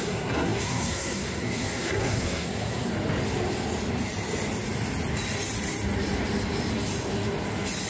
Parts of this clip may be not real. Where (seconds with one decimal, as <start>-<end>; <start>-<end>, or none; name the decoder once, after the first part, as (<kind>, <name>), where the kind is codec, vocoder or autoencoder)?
0.0-2.9 (codec, SNAC)